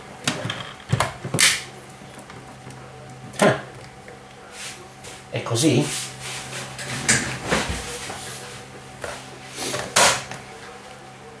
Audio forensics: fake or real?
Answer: real